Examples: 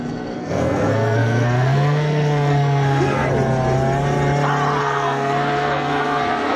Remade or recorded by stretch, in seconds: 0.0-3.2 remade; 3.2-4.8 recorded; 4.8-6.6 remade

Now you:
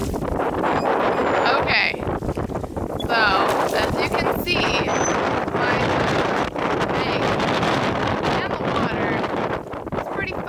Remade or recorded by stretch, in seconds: 0.0-10.5 recorded

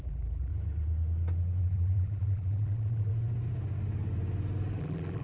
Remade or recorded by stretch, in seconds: 0.0-0.5 remade; 0.5-1.6 recorded; 1.6-3.1 remade; 3.1-4.8 recorded; 4.8-5.2 remade

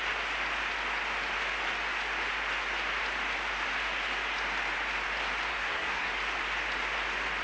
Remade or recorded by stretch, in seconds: 0.0-5.5 recorded; 5.5-6.1 remade; 6.1-7.4 recorded

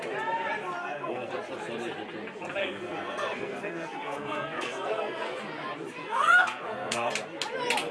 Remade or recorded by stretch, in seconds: 0.0-0.8 recorded; 0.8-1.3 remade; 1.3-2.6 recorded; 2.6-5.4 remade; 5.4-6.0 recorded; 6.0-7.1 remade; 7.1-7.9 recorded

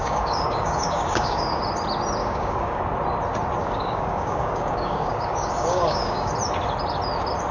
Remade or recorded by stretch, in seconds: 0.0-1.6 remade; 1.6-2.2 recorded; 2.2-2.8 remade; 2.8-3.6 recorded; 3.6-6.3 remade; 6.3-7.5 recorded

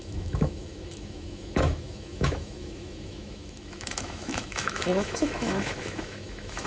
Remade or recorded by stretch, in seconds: 0.0-6.7 remade

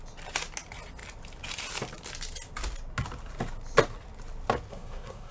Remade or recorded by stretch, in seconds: 0.0-4.7 recorded; 4.7-5.3 remade